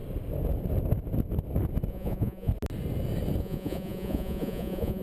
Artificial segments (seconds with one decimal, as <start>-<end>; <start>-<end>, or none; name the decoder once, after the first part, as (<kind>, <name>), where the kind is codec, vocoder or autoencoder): 1.9-2.5 (vocoder, Vocos); 3.4-5.0